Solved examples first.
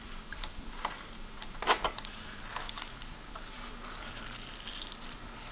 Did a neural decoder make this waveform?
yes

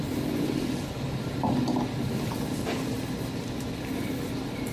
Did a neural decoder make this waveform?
no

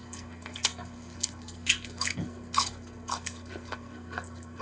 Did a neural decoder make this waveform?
yes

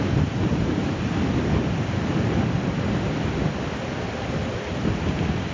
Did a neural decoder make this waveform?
no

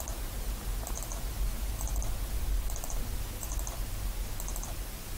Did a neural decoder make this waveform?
no